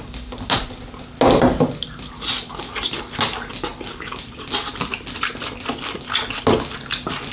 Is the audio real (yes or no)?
yes